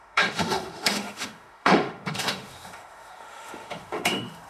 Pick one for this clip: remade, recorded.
remade